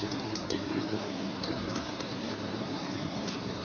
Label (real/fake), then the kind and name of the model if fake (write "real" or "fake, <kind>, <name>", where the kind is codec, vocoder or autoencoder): fake, codec, SNAC